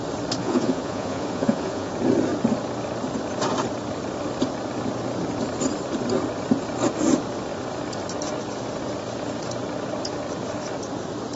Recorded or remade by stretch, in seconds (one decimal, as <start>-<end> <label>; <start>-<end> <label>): 0.0-0.4 recorded; 0.4-1.9 remade; 1.9-11.4 recorded